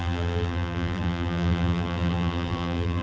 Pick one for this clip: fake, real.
fake